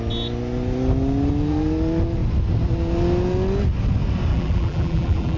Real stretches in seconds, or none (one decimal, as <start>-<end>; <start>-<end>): 0.0-4.3